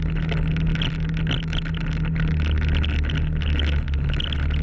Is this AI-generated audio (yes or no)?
no